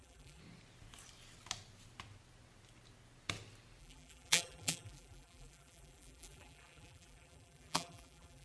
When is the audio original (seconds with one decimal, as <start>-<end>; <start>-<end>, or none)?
0.4-3.8